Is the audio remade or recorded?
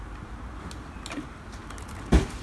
recorded